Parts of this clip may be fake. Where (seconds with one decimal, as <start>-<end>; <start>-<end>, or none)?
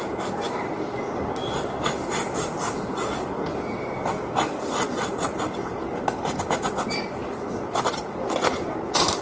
none